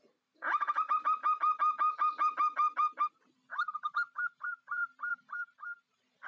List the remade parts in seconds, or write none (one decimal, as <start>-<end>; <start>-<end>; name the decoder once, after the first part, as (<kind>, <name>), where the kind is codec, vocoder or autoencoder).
0.0-1.2 (vocoder, BigVGAN v2); 3.1-6.3